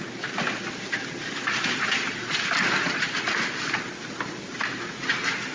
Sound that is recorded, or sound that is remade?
recorded